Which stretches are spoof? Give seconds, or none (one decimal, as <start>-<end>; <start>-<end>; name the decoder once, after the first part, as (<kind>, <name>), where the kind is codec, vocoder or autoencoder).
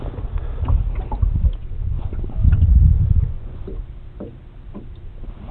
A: 1.6-3.6 (vocoder, Vocos)